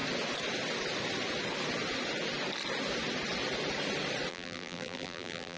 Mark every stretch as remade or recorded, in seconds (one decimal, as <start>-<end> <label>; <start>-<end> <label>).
0.0-4.3 recorded; 4.3-5.6 remade